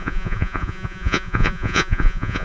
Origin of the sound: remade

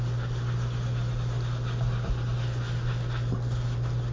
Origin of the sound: recorded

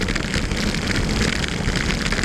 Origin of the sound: recorded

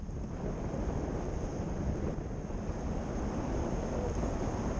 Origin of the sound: recorded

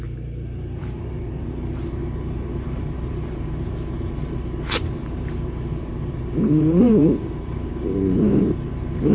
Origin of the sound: remade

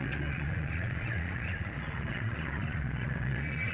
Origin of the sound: remade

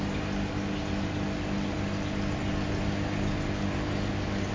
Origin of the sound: recorded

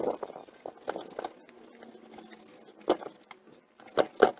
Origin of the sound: recorded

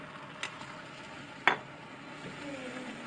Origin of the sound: recorded